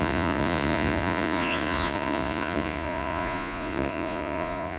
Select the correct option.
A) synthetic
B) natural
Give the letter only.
A